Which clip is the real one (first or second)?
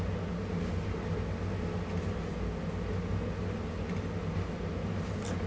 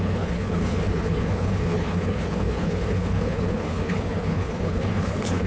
first